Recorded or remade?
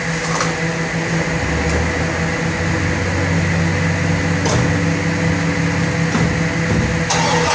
recorded